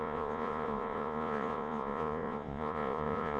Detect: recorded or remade remade